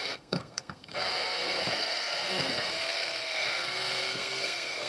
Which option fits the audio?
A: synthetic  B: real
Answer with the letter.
A